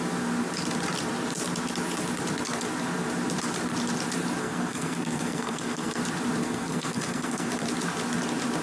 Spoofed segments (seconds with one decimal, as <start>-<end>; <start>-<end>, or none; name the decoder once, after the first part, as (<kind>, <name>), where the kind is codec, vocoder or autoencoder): 4.4-6.0 (codec, SNAC); 6.4-7.5